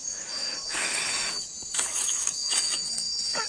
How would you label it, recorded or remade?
remade